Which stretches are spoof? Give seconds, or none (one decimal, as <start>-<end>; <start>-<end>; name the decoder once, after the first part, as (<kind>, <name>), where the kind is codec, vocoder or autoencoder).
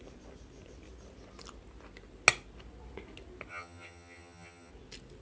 3.5-4.7 (vocoder, HiFi-GAN)